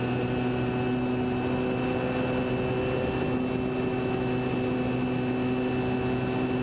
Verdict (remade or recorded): recorded